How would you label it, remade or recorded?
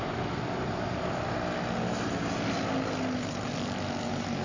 recorded